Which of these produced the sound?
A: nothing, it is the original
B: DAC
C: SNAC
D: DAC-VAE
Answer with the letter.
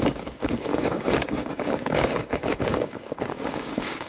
B